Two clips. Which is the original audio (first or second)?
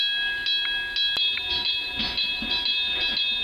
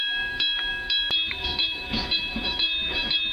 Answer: first